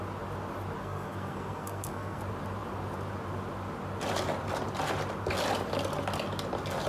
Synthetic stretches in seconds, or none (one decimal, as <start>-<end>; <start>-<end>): 0.8-2.2